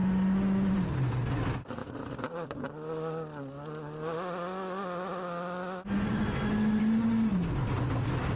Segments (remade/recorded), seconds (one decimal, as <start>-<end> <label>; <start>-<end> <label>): 0.0-8.4 recorded